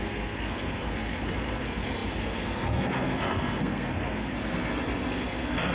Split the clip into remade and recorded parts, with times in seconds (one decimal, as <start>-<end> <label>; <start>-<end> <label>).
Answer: 0.0-5.7 remade